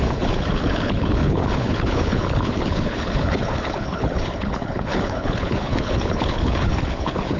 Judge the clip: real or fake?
fake